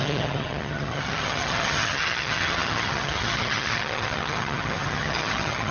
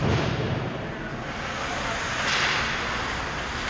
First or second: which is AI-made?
first